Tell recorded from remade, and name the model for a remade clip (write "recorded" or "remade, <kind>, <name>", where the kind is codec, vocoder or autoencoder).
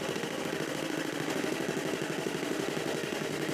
remade, autoencoder, DAC-VAE